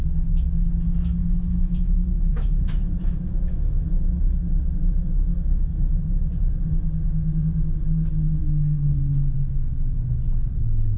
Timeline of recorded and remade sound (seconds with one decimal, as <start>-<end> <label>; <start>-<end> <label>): 0.0-1.2 recorded; 1.2-4.0 remade; 4.0-5.3 recorded; 5.3-6.2 remade; 6.2-11.0 recorded

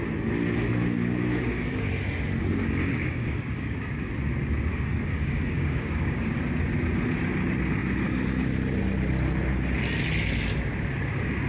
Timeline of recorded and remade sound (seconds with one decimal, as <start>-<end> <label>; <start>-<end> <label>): 0.0-1.3 recorded; 1.3-1.9 remade; 1.9-2.6 recorded; 2.6-4.1 remade; 4.1-4.7 recorded; 4.7-6.4 remade; 6.4-11.5 recorded